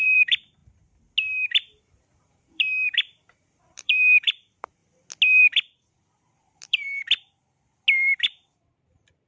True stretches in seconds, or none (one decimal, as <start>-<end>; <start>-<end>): 0.6-2.2; 4.8-5.4; 7.0-8.1